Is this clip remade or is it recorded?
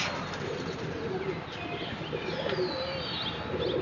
recorded